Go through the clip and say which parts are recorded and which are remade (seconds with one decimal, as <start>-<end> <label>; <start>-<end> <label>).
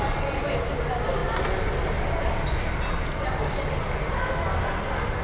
0.0-5.2 recorded